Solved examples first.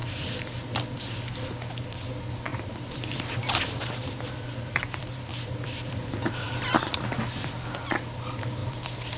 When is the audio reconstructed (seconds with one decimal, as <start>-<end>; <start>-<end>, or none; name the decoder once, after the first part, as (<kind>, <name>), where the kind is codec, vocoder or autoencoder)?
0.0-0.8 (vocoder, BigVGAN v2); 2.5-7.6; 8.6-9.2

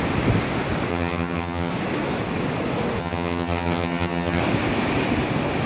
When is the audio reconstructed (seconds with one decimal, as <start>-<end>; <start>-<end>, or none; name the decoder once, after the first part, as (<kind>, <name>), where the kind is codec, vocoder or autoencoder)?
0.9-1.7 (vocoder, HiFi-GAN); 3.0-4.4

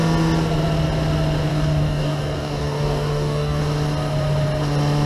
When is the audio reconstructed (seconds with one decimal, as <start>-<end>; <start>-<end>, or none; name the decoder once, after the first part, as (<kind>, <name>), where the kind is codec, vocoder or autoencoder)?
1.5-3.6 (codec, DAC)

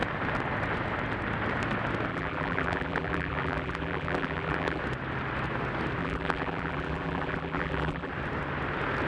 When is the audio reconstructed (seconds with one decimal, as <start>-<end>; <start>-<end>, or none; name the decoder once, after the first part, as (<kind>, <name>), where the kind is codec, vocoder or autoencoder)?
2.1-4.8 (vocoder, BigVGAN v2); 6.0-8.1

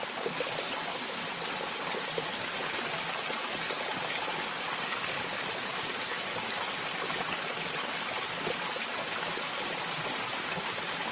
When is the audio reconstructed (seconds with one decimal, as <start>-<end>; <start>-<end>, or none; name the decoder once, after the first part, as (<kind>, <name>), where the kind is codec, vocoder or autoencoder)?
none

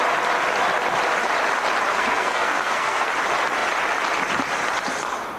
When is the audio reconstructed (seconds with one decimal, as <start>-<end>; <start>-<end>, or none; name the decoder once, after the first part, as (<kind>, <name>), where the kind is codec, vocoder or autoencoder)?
1.9-3.1 (codec, SNAC)

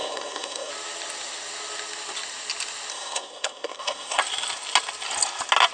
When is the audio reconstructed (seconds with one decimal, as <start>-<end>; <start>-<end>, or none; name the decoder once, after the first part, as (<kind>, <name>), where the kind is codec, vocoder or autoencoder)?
0.0-0.7 (codec, SNAC); 2.9-4.2

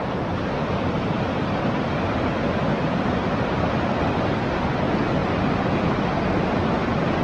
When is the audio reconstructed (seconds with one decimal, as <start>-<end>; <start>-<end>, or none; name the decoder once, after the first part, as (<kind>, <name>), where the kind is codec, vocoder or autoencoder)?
none